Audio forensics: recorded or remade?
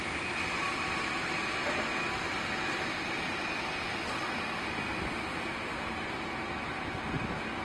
remade